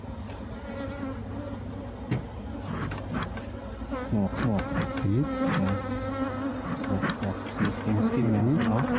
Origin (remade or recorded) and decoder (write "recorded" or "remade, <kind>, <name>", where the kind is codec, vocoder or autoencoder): recorded